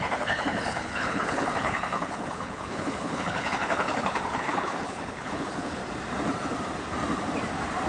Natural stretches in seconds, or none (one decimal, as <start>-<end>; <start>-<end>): 5.8-7.9